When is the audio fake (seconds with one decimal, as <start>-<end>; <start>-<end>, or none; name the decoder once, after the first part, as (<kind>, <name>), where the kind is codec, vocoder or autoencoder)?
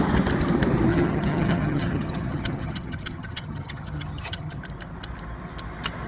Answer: 0.9-4.6 (vocoder, HiFi-GAN)